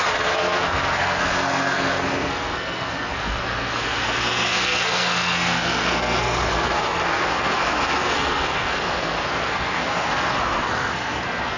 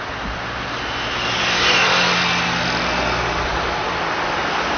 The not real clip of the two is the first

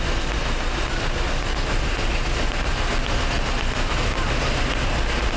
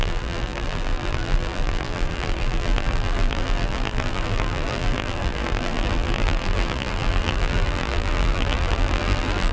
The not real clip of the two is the second